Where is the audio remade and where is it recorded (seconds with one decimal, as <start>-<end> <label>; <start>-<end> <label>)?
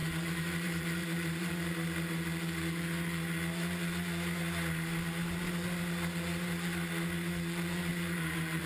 0.0-1.5 remade; 1.5-7.9 recorded; 7.9-8.7 remade